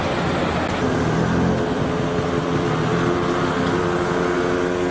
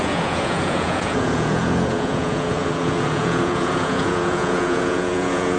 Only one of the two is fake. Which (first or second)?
second